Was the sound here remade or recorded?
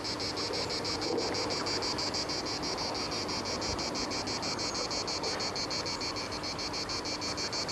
recorded